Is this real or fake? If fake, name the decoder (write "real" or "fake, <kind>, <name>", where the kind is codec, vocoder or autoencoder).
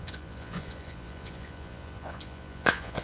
fake, vocoder, Vocos